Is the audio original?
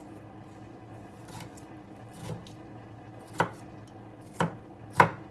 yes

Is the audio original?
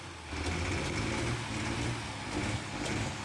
yes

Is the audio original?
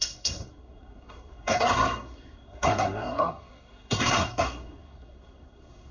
no